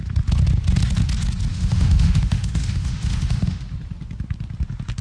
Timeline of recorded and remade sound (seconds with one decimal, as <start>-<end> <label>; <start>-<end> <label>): 0.0-1.5 recorded; 1.5-3.6 remade; 3.6-5.0 recorded